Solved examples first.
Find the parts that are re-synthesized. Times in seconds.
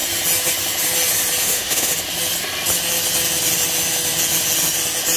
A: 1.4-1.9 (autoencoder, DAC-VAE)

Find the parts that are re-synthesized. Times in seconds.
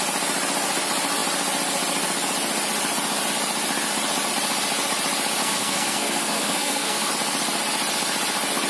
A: 5.4-7.1 (codec, SNAC)